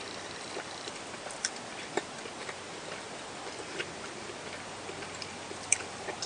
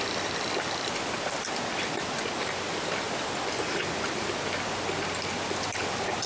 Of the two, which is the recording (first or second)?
second